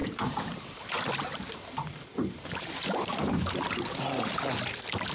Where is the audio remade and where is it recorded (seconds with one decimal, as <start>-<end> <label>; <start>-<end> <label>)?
0.0-0.9 remade; 0.9-1.3 recorded; 1.3-3.8 remade; 3.8-5.1 recorded